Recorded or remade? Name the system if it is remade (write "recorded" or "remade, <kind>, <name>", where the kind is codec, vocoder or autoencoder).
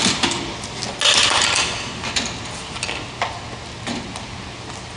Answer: recorded